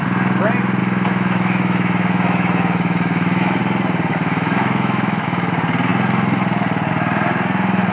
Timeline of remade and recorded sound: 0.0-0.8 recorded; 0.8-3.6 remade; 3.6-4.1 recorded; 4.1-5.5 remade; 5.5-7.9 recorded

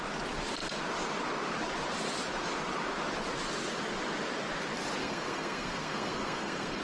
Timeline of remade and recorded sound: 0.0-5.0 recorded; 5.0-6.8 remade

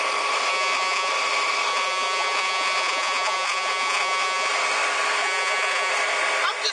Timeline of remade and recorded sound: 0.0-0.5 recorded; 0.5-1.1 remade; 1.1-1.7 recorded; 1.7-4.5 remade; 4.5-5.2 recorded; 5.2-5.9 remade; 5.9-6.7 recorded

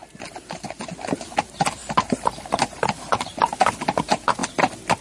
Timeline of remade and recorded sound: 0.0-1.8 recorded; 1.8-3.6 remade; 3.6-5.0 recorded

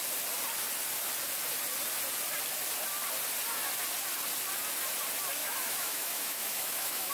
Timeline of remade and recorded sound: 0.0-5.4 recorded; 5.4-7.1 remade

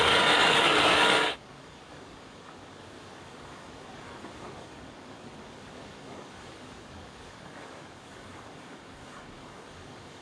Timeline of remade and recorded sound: 0.0-10.2 remade